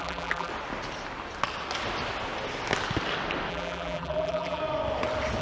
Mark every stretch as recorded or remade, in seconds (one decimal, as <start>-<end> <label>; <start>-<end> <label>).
0.0-0.5 remade; 0.5-3.5 recorded; 3.5-4.6 remade; 4.6-5.4 recorded

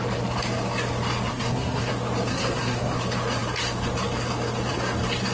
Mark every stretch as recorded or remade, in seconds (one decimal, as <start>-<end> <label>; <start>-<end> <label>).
0.0-1.3 recorded; 1.3-1.9 remade; 1.9-2.3 recorded; 2.3-3.0 remade; 3.0-5.3 recorded

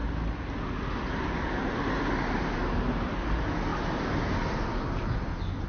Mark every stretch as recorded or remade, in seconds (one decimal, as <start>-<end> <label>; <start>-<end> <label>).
0.0-5.7 recorded

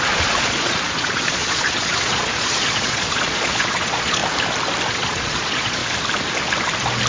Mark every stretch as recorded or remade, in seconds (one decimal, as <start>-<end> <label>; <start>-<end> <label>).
0.0-4.2 remade; 4.2-4.9 recorded; 4.9-5.8 remade; 5.8-7.1 recorded

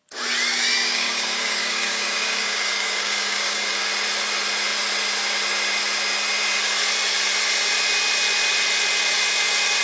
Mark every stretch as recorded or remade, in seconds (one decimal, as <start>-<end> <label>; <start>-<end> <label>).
0.0-0.5 recorded; 0.5-3.9 remade; 3.9-9.8 recorded

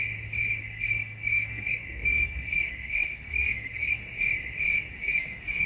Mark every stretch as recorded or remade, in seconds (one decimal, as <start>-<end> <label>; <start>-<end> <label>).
0.0-0.6 recorded; 0.6-4.0 remade; 4.0-4.9 recorded; 4.9-5.7 remade